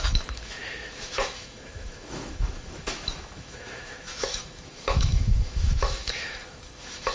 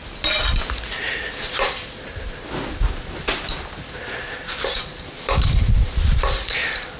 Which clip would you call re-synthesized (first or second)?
first